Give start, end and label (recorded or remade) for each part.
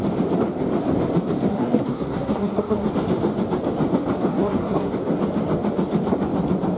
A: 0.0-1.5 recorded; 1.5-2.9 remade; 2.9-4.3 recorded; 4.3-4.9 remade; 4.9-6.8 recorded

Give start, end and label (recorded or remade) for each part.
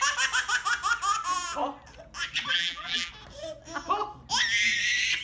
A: 0.0-2.5 recorded; 2.5-3.1 remade; 3.1-5.2 recorded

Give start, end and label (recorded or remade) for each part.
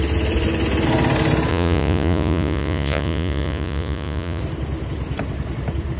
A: 0.0-1.5 recorded; 1.5-4.4 remade; 4.4-6.0 recorded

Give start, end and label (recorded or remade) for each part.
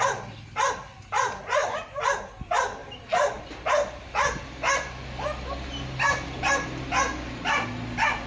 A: 0.0-1.6 recorded; 1.6-2.1 remade; 2.1-2.8 recorded; 2.8-3.4 remade; 3.4-8.3 recorded